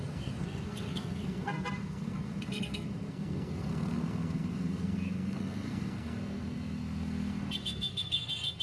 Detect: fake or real fake